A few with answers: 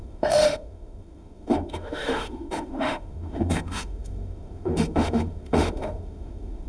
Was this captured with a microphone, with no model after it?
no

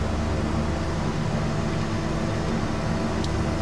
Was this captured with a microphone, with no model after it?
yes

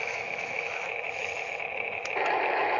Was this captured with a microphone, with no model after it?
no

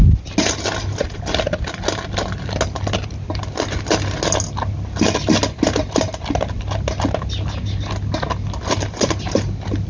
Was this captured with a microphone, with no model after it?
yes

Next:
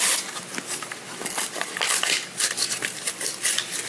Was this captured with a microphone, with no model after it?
yes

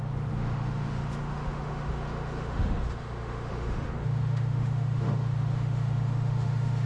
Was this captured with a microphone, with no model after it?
no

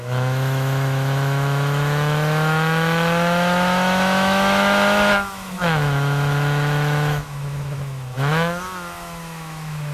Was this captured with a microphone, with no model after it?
no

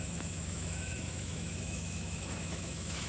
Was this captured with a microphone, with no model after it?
no